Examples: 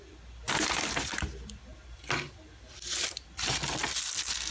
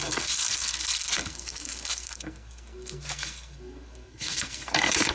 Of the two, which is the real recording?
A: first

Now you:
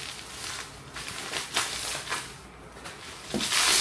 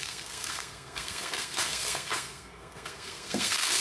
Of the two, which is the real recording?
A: first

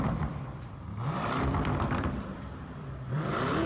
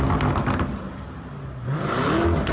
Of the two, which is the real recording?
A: second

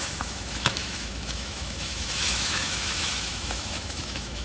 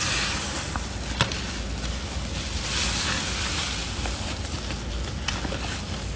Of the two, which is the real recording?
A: second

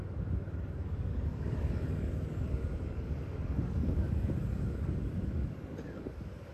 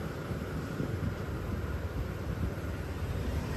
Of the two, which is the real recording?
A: second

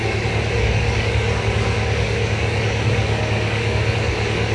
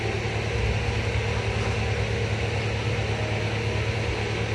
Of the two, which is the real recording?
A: second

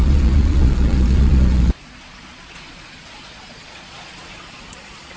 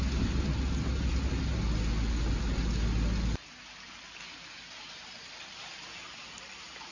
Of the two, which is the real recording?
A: second